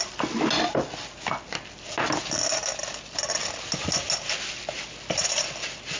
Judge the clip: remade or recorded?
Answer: recorded